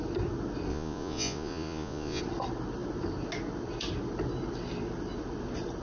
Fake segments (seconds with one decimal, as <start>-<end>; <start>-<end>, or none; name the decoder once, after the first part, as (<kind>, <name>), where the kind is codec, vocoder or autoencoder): 0.7-2.2 (vocoder, Vocos)